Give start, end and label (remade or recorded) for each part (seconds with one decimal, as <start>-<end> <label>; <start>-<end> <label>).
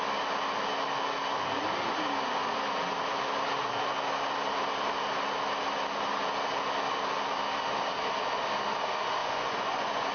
0.0-9.2 recorded; 9.2-10.1 remade